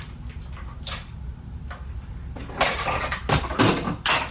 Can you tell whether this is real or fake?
real